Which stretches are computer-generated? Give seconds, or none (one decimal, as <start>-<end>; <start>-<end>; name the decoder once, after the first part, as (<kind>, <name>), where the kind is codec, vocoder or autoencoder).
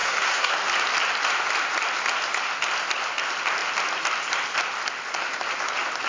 0.0-0.5 (codec, SNAC)